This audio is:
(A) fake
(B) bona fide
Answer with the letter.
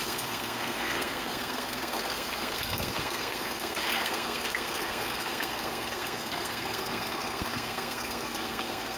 A